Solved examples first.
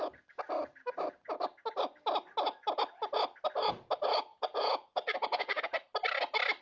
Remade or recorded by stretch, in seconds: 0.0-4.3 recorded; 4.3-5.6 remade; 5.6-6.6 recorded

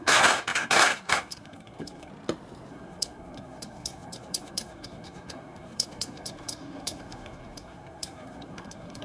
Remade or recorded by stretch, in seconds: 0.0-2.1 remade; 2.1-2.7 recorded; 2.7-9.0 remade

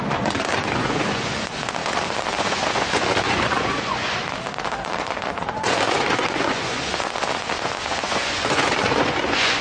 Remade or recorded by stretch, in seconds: 0.0-4.2 remade; 4.2-5.0 recorded; 5.0-9.6 remade

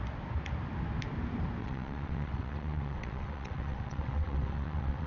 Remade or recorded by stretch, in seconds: 0.0-1.6 recorded; 1.6-5.1 remade

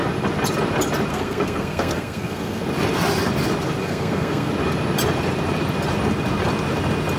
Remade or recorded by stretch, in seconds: 0.0-1.1 recorded; 1.1-2.6 remade; 2.6-3.8 recorded; 3.8-4.5 remade; 4.5-7.2 recorded